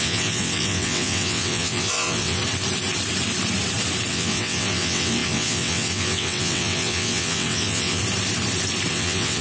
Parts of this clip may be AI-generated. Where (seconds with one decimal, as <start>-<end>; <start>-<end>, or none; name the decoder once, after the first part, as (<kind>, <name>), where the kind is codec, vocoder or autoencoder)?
0.0-2.4 (vocoder, WaveNeXt); 4.1-8.0; 8.9-9.4